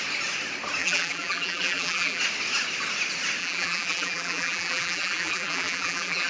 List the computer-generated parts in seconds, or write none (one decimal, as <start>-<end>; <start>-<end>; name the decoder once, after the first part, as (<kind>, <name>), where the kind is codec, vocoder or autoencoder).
0.8-2.2 (vocoder, BigVGAN v2); 3.4-6.3